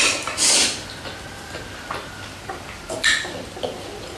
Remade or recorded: recorded